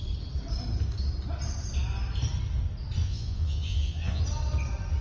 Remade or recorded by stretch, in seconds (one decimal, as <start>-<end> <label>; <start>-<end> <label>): 0.0-3.0 recorded; 3.0-4.2 remade; 4.2-5.0 recorded